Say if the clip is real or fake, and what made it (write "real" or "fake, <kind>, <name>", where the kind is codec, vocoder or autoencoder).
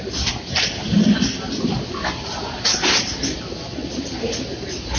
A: real